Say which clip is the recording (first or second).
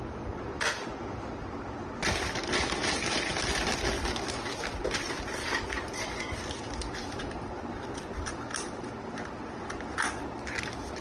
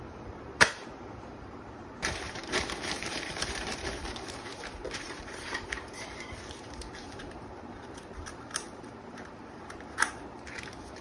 first